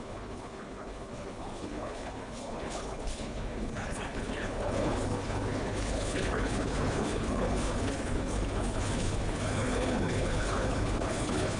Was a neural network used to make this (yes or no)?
yes